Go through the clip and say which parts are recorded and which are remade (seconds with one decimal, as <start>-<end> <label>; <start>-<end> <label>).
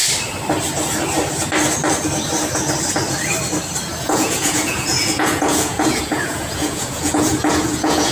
0.0-4.0 recorded; 4.0-8.1 remade